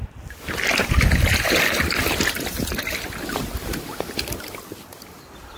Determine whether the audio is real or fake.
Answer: real